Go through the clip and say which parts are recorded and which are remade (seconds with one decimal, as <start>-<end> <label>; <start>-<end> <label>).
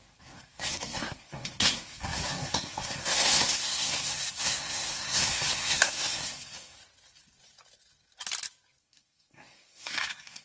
0.0-6.8 remade; 6.8-8.8 recorded; 8.8-10.4 remade